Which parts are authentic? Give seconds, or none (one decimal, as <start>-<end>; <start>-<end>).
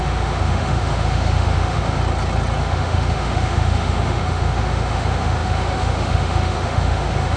2.0-2.6